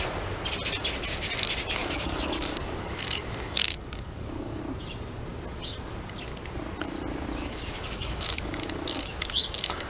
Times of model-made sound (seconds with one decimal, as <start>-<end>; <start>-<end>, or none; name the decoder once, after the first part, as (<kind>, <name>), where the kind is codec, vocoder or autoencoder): 1.8-4.6 (codec, DAC); 7.4-9.9